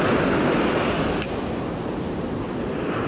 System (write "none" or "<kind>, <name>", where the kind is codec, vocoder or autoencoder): none